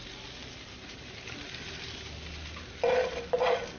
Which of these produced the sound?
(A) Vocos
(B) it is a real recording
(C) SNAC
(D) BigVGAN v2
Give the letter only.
D